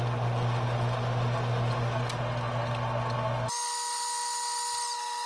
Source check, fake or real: real